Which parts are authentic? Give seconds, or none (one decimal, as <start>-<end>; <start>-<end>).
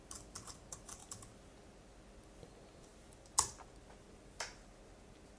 0.0-5.4